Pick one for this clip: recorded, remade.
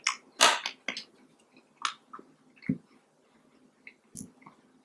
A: recorded